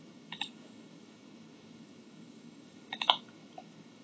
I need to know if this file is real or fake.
fake